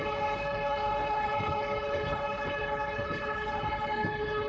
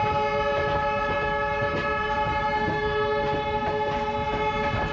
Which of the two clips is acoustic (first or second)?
second